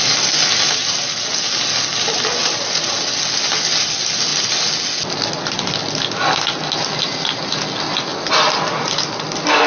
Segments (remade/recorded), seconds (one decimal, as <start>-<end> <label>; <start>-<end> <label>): 0.0-2.4 recorded; 2.4-3.1 remade; 3.1-8.1 recorded; 8.1-9.0 remade; 9.0-9.7 recorded